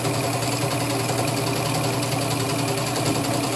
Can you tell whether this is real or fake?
real